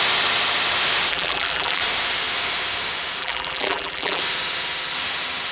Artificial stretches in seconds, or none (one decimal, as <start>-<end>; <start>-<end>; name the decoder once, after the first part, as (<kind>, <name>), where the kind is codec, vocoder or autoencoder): 1.1-1.8 (vocoder, BigVGAN v2); 3.2-4.2